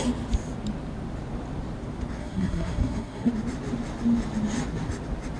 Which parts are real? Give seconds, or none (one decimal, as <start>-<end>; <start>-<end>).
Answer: 0.0-2.2; 3.3-5.4